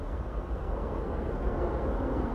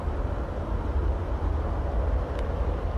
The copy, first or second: first